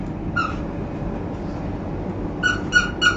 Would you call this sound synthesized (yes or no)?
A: no